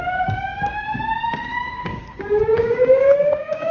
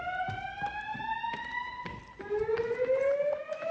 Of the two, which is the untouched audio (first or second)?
second